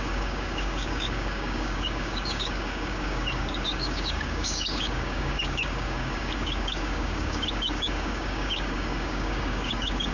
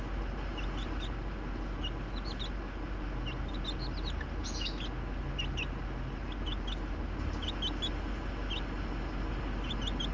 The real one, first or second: second